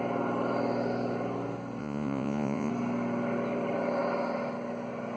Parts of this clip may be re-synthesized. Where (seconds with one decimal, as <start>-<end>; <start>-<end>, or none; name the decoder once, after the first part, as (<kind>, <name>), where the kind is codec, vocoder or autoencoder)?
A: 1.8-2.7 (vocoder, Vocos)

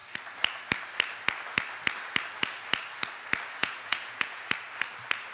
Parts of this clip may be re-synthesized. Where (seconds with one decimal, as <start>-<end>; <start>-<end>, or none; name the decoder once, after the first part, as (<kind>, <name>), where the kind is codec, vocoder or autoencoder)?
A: 3.6-4.4 (vocoder, Vocos)

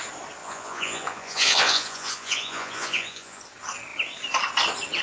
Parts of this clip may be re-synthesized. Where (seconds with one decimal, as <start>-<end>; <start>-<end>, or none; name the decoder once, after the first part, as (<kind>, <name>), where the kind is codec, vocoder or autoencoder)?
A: 0.4-3.4 (vocoder, Vocos)

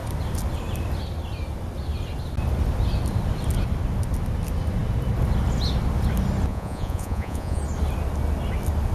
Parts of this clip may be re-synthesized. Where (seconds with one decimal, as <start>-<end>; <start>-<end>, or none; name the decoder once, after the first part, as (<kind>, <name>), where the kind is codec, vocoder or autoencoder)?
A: 6.5-7.6 (vocoder, Vocos)

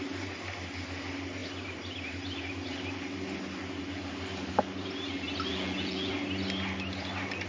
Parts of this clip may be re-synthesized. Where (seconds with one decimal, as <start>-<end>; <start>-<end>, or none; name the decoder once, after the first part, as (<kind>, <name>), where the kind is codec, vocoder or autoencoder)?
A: 5.5-6.1 (vocoder, Vocos)